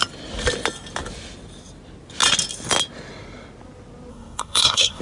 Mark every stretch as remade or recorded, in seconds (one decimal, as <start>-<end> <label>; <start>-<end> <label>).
0.0-4.1 recorded; 4.1-5.0 remade